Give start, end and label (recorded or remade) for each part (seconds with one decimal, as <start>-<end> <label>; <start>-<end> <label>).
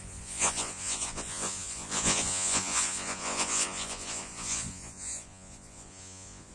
0.0-6.5 remade